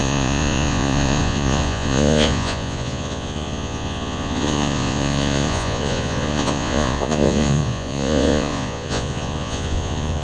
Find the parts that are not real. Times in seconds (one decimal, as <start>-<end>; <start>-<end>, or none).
0.0-10.2